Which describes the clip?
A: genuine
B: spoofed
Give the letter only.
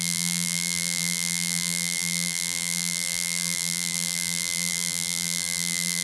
B